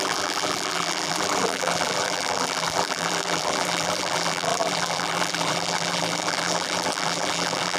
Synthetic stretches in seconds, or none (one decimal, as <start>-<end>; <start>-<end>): 0.0-7.8